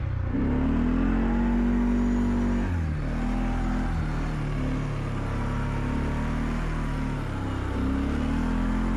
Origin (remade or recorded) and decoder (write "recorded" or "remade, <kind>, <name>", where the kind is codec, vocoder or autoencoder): recorded